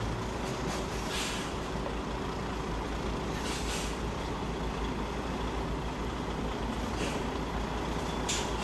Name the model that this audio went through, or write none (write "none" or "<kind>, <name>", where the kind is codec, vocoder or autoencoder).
none